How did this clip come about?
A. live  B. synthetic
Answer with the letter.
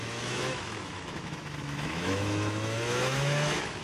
B